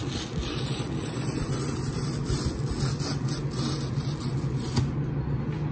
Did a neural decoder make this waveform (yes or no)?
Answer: no